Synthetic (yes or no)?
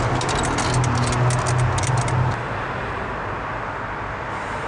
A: no